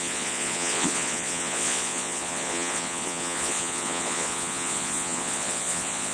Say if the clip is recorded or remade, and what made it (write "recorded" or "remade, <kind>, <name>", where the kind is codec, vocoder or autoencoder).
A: remade, vocoder, Vocos